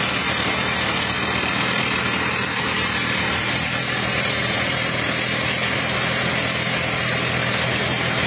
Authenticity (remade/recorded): recorded